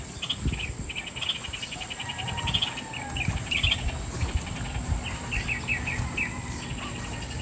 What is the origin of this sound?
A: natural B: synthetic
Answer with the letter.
A